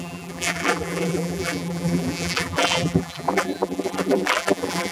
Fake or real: fake